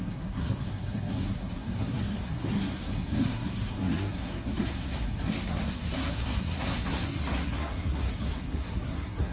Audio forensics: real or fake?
fake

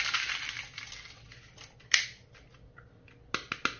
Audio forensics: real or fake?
real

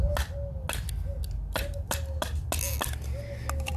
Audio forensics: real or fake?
real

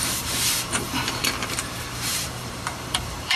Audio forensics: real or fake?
fake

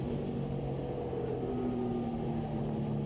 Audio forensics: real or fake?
real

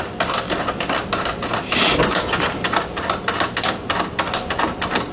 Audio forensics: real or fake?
real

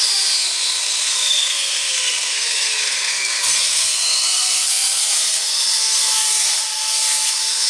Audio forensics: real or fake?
fake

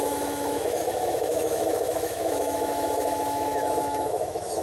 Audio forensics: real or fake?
fake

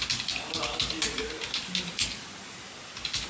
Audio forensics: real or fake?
real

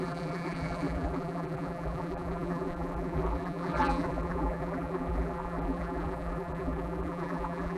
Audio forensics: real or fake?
fake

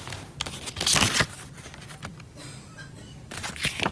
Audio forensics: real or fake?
real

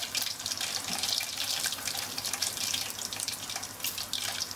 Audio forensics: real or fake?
fake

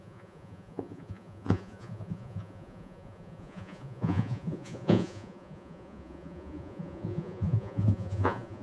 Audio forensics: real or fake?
fake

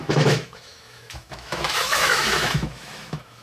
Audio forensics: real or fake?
fake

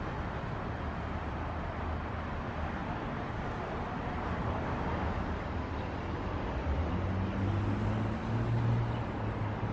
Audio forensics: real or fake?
real